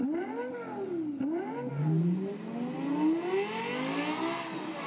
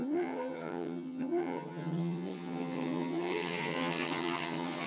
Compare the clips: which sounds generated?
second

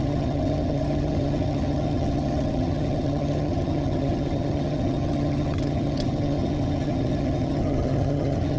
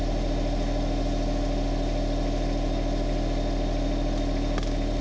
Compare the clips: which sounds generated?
first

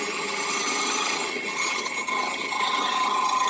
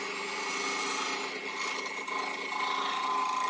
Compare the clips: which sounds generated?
first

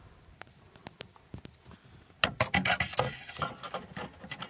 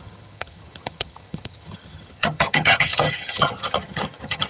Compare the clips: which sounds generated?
second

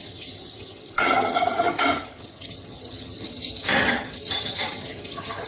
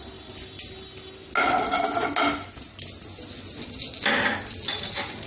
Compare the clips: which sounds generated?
first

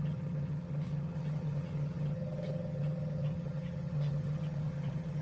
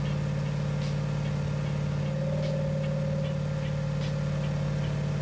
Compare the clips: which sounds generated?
first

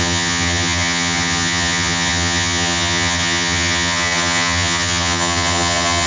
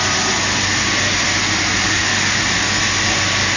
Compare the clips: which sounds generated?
first